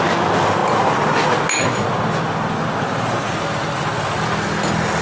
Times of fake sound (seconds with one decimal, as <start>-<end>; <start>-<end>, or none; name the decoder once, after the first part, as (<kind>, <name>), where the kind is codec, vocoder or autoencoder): none